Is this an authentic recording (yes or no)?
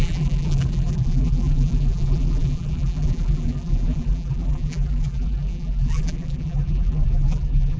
no